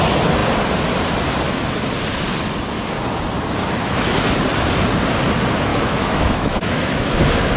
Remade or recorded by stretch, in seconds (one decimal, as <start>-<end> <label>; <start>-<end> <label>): 0.0-5.7 recorded; 5.7-7.1 remade; 7.1-7.6 recorded